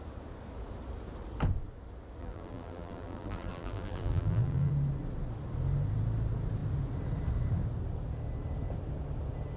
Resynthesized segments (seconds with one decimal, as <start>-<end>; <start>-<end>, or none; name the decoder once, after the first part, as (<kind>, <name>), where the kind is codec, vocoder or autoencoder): 2.2-4.7 (vocoder, BigVGAN v2)